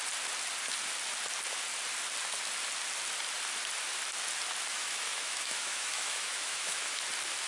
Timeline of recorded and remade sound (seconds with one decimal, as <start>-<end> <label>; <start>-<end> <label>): 0.0-4.7 recorded; 4.7-7.0 remade; 7.0-7.5 recorded